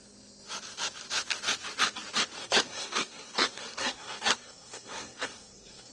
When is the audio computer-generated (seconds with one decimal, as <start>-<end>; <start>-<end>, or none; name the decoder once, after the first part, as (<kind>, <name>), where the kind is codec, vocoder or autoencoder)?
2.4-5.9 (codec, SNAC)